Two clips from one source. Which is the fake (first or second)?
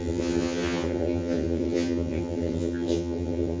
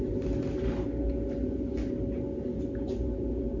first